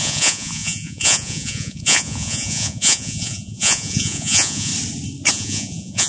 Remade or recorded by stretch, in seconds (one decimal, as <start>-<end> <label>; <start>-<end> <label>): 0.0-4.7 remade; 4.7-5.3 recorded; 5.3-6.1 remade